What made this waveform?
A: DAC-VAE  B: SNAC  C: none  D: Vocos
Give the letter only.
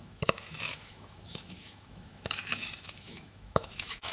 A